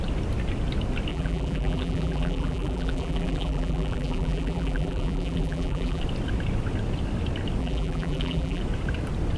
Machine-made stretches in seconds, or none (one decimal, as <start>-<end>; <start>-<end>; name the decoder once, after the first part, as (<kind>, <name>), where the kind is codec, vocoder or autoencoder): 1.1-6.0 (vocoder, BigVGAN v2); 7.6-8.6